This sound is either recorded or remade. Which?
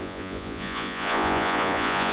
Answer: remade